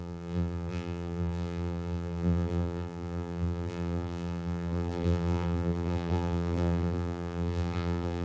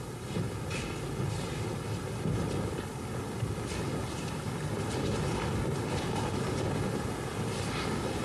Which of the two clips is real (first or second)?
second